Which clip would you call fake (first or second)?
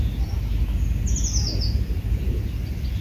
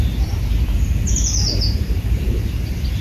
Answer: second